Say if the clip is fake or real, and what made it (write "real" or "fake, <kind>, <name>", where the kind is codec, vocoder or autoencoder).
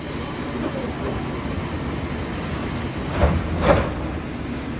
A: real